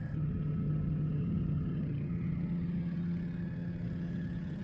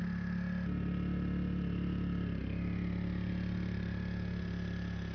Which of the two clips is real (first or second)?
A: second